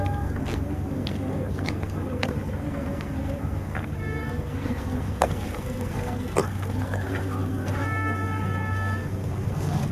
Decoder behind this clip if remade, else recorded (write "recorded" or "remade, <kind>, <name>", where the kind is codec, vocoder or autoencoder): remade, codec, SNAC